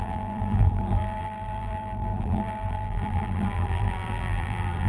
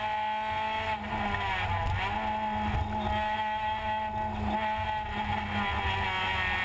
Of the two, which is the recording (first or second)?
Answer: second